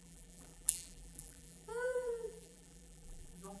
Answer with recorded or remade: remade